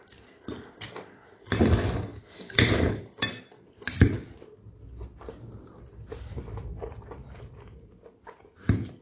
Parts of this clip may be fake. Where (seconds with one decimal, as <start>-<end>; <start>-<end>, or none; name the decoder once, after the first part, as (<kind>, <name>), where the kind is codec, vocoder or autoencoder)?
0.0-4.2 (vocoder, BigVGAN v2); 8.5-9.0